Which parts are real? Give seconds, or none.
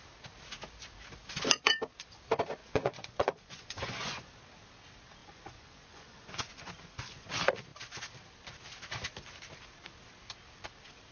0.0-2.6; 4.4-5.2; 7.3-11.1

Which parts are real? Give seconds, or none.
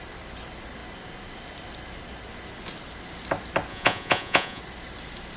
0.0-3.7; 4.6-5.4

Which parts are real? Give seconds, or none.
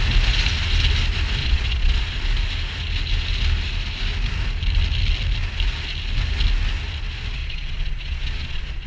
0.0-1.4; 2.0-7.4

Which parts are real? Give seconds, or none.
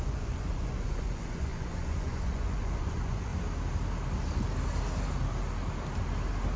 3.3-6.6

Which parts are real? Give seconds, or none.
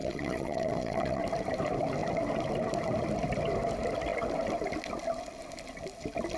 1.2-6.4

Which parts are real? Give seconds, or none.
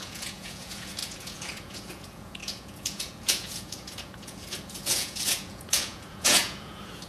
none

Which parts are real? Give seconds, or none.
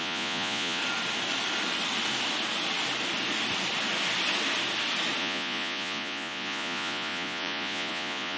0.8-5.2